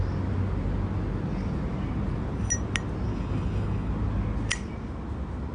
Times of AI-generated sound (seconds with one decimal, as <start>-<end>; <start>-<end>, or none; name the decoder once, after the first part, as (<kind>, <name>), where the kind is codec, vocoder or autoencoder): 3.1-3.9 (codec, HILCodec)